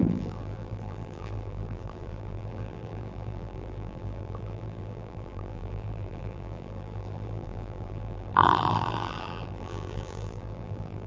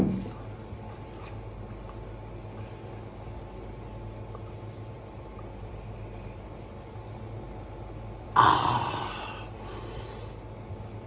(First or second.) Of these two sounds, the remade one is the first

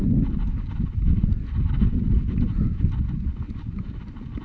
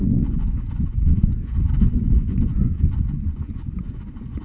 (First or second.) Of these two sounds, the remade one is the second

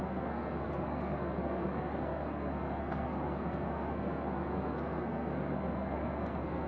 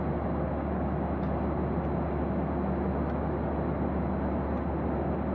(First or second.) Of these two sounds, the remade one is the first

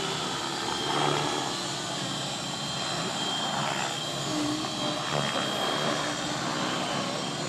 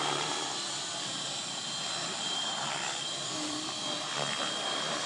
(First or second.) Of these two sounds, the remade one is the second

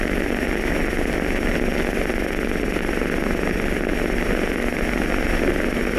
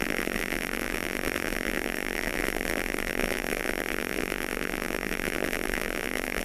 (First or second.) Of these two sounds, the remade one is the second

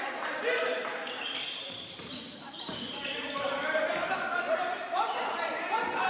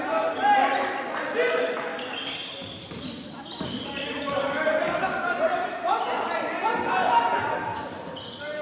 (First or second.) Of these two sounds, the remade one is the first